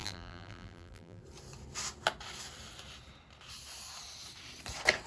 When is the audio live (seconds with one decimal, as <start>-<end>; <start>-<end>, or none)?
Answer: 1.2-5.1